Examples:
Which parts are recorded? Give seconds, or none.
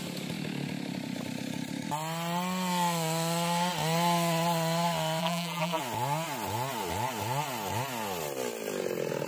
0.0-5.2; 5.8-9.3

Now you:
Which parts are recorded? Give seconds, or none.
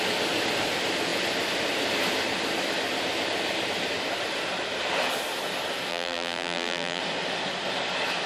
0.0-5.9; 7.0-8.3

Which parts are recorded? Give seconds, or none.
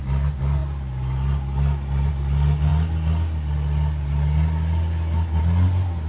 0.0-6.1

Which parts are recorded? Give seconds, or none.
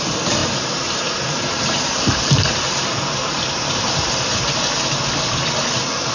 0.0-0.4; 4.1-6.1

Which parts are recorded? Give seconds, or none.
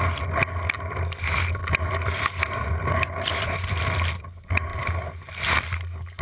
0.0-6.2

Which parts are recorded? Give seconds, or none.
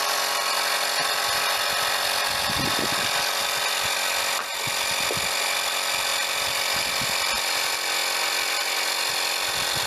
0.0-6.1; 6.8-9.9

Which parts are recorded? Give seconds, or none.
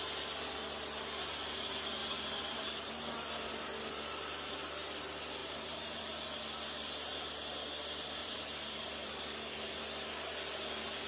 0.0-2.0; 2.9-5.4; 6.4-8.2; 9.1-11.1